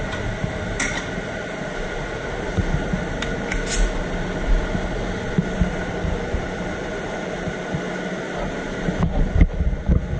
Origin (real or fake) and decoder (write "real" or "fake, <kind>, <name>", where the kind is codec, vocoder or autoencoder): real